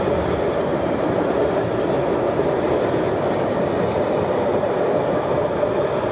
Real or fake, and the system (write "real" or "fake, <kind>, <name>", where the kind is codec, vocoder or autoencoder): real